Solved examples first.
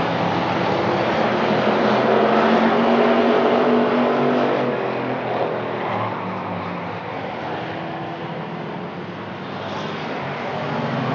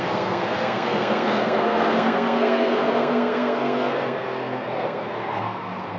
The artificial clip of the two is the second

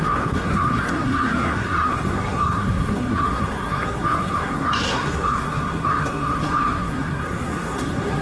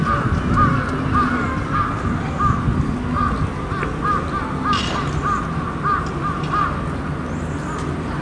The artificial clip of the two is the first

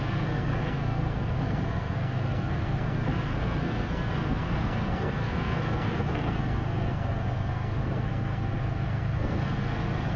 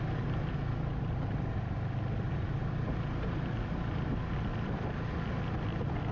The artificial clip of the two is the first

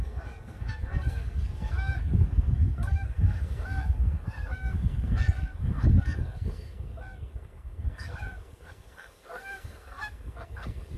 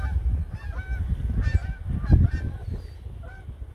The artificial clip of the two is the first